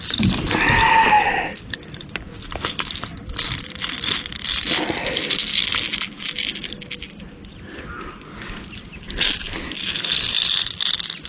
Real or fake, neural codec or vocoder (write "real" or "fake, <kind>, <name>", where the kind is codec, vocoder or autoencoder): real